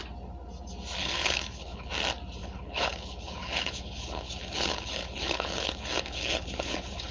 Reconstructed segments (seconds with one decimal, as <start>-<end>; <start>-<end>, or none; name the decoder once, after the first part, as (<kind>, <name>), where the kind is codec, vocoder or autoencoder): 1.0-1.9 (codec, HILCodec); 2.4-7.1